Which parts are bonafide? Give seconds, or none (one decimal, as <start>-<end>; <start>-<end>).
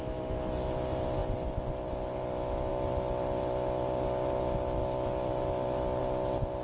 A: 0.0-6.6